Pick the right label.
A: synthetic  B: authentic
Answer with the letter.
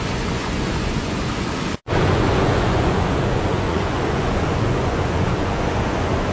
A